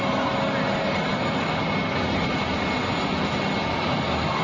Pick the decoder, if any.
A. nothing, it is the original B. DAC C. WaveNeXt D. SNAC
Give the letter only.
A